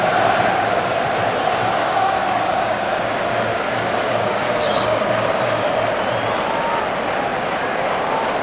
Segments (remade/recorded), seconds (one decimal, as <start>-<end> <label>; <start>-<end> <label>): 0.0-1.8 recorded; 1.8-3.0 remade; 3.0-3.5 recorded; 3.5-5.0 remade; 5.0-8.4 recorded